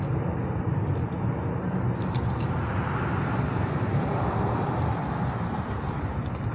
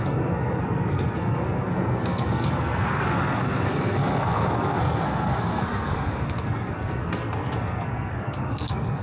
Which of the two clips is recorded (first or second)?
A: first